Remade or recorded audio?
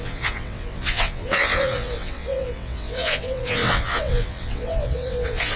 remade